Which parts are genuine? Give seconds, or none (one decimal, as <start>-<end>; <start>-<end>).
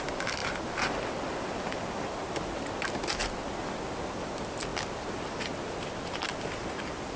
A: 0.0-7.2